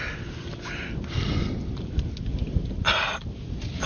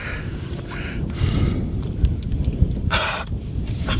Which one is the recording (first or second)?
first